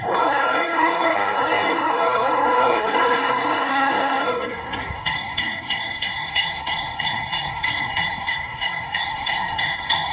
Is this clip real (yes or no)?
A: no